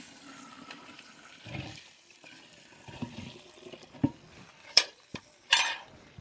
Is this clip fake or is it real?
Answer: fake